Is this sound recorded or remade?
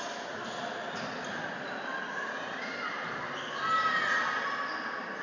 recorded